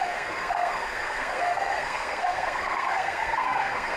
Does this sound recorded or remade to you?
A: remade